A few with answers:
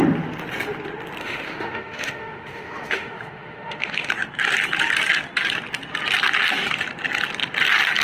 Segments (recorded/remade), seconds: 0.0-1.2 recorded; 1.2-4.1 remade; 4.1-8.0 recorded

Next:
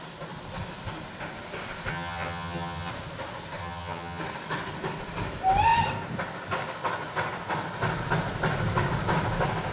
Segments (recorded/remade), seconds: 0.0-1.9 recorded; 1.9-2.9 remade; 2.9-3.6 recorded; 3.6-4.2 remade; 4.2-9.7 recorded

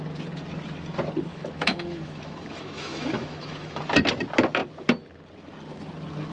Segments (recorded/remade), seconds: 0.0-1.3 recorded; 1.3-3.8 remade; 3.8-6.3 recorded

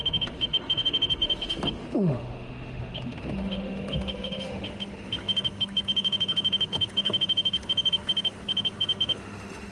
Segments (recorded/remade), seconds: 0.0-9.7 remade

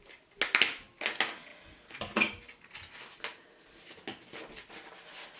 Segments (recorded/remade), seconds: 0.0-5.4 recorded

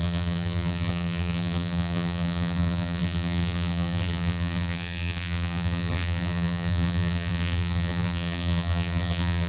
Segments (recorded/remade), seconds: 0.0-9.5 remade

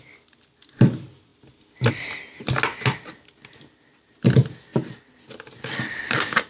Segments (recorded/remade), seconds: 0.0-6.5 recorded

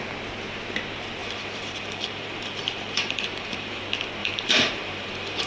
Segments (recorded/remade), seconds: 0.0-1.2 recorded; 1.2-3.8 remade; 3.8-4.2 recorded; 4.2-5.5 remade